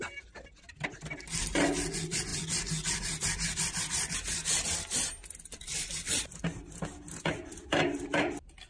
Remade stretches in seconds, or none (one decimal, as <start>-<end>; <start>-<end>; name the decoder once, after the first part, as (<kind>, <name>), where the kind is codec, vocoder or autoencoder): none

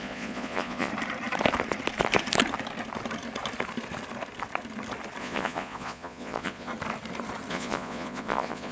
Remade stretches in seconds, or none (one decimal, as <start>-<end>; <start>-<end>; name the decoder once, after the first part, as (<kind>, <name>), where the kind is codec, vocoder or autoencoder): 0.0-0.9 (vocoder, Vocos); 5.2-6.7; 7.5-8.7

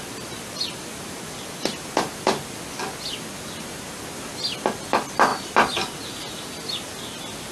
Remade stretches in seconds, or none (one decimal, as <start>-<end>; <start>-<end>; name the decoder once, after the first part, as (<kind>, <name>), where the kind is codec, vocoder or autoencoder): none

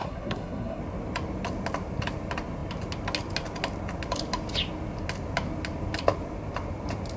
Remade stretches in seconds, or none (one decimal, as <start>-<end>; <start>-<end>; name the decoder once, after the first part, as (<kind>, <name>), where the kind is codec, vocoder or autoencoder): 0.0-0.8 (codec, SNAC)

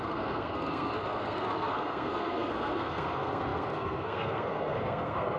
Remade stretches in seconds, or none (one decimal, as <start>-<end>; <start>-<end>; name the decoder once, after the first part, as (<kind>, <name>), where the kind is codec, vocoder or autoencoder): 0.0-5.4 (codec, SNAC)

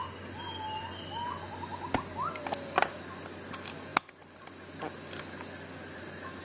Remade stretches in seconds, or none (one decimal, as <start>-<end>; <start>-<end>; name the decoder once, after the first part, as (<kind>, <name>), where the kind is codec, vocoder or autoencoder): none

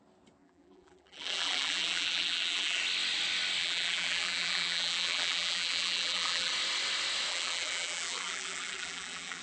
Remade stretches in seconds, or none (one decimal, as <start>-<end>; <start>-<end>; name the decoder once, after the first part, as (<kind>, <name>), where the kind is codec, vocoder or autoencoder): 0.4-2.8 (vocoder, BigVGAN v2); 3.6-6.5; 7.3-9.4